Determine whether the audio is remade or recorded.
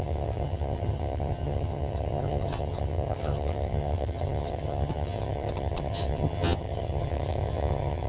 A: remade